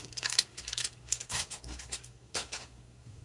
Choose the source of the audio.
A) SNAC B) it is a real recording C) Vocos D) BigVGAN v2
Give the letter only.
A